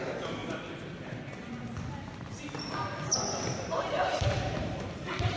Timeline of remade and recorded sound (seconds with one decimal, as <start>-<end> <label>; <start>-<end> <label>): 0.0-0.4 remade; 0.4-3.4 recorded; 3.4-5.4 remade